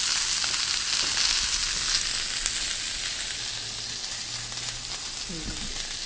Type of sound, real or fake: real